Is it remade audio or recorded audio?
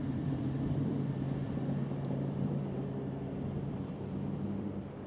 remade